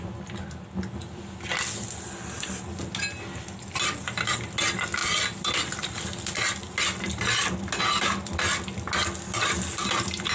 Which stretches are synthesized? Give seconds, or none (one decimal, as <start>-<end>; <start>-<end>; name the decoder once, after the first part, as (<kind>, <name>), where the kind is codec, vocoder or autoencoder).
none